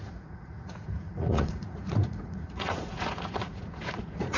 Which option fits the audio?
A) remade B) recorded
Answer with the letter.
A